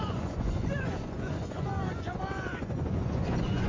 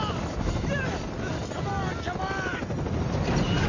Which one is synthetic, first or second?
first